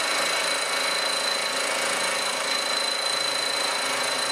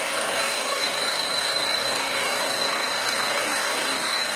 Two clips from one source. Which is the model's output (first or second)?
second